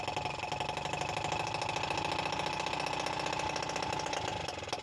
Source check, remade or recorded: recorded